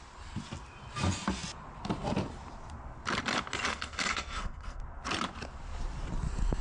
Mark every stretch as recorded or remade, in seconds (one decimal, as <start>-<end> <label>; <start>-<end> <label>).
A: 0.0-3.7 recorded; 3.7-4.8 remade; 4.8-6.6 recorded